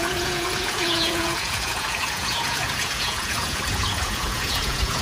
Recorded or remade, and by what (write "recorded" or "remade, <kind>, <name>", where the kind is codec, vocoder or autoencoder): remade, vocoder, Vocos